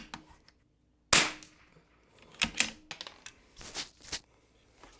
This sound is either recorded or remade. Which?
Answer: recorded